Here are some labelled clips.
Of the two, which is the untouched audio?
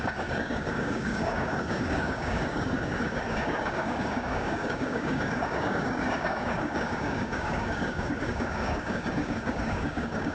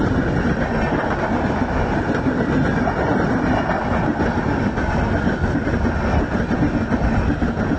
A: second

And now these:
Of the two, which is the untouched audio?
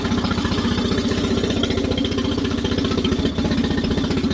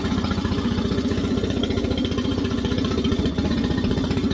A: first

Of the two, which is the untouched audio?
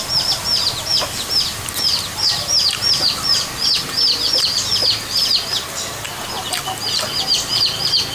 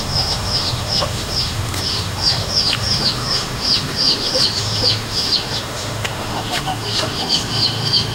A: first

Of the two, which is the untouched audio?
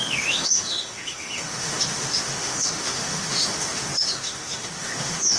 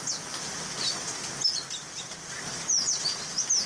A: second